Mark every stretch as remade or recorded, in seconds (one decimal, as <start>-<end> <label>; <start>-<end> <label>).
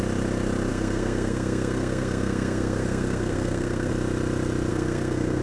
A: 0.0-0.7 recorded; 0.7-3.9 remade; 3.9-4.7 recorded; 4.7-5.4 remade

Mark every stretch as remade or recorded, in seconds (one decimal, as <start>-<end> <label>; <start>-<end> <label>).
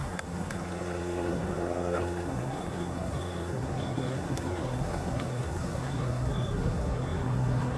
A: 0.0-7.8 remade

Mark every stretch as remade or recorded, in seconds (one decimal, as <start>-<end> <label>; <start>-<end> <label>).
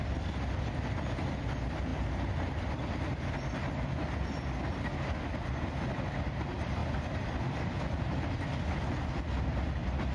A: 0.0-10.1 recorded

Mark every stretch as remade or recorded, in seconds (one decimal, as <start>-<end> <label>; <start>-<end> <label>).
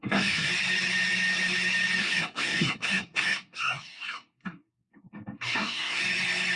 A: 0.0-0.5 remade; 0.5-2.0 recorded; 2.0-6.0 remade; 6.0-6.6 recorded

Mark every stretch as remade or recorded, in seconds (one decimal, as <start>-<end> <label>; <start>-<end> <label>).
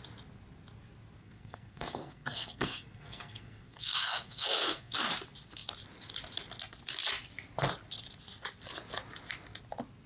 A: 0.0-1.2 recorded; 1.2-5.1 remade; 5.1-10.1 recorded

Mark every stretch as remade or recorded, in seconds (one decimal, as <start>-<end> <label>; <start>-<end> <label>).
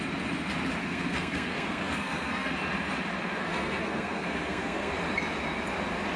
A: 0.0-0.8 recorded; 0.8-2.5 remade; 2.5-3.4 recorded; 3.4-4.9 remade; 4.9-6.2 recorded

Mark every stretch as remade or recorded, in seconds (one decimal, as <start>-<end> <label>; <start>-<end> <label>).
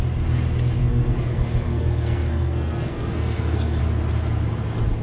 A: 0.0-0.8 recorded; 0.8-3.8 remade; 3.8-5.0 recorded